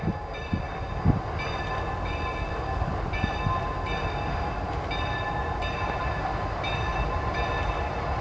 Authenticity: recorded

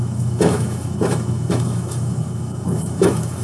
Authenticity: remade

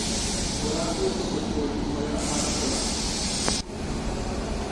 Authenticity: recorded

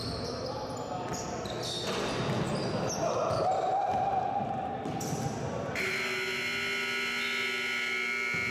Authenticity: recorded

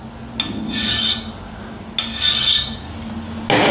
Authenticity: recorded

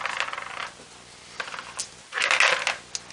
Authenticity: recorded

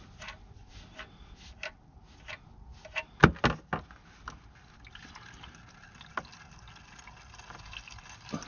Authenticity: recorded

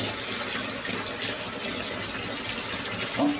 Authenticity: recorded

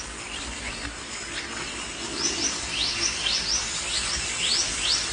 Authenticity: recorded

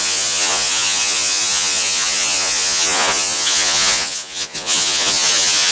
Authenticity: remade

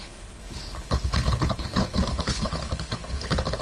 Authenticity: remade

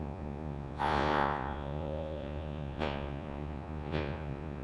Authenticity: remade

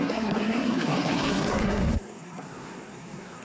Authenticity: remade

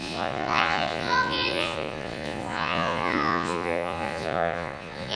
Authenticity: remade